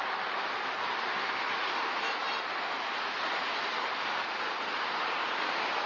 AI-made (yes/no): no